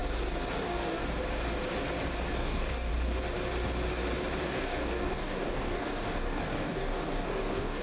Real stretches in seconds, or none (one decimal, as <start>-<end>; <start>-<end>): 0.0-0.6; 1.0-2.3; 2.9-4.4